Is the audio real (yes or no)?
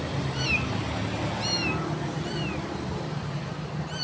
yes